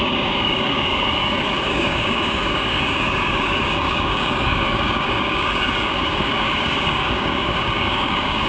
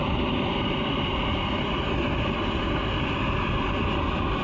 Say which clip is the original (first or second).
second